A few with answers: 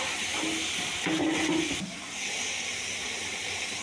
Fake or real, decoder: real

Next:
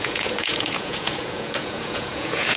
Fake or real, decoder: fake, vocoder, Vocos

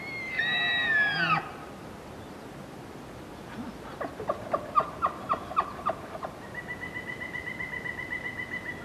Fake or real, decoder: real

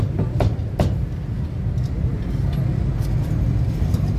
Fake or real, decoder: real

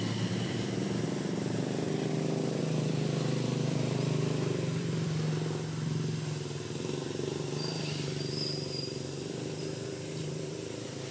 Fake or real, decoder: fake, vocoder, BigVGAN v2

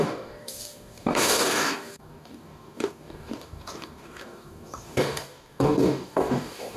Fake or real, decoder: fake, codec, DAC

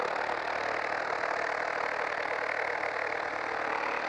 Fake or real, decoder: real